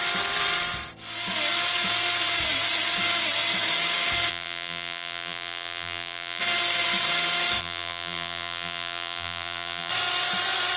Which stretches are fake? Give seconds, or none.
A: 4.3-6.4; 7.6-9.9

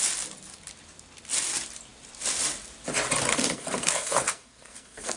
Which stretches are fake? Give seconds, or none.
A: 3.3-5.2

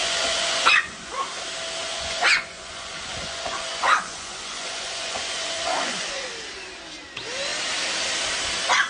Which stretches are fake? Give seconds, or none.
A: 0.0-1.1; 1.8-6.3